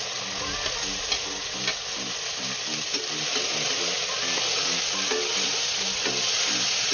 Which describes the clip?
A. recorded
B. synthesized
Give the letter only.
A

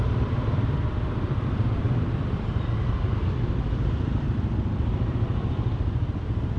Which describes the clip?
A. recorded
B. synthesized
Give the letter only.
B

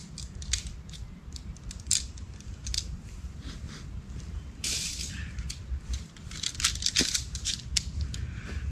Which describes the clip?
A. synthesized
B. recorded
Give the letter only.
B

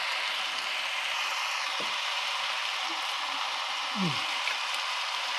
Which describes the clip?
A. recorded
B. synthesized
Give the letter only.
A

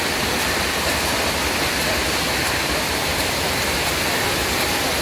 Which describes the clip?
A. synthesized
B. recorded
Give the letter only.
A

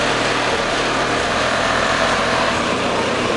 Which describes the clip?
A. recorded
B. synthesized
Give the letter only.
B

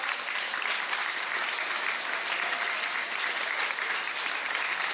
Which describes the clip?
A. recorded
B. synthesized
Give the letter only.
B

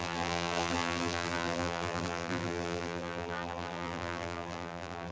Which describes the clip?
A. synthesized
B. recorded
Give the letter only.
A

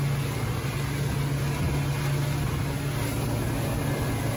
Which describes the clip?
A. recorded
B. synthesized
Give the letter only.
A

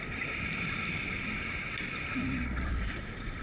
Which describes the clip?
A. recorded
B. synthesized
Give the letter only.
B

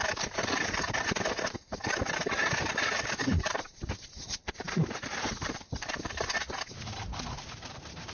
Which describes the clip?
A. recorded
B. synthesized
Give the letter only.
B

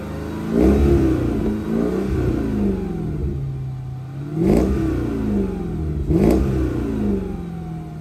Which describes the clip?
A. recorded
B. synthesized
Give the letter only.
A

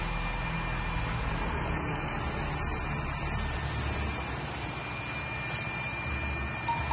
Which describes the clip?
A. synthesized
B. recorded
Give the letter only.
B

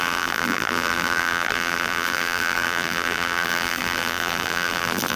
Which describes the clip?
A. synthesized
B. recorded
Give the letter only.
A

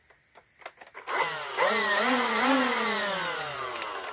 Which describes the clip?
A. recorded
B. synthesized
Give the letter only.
A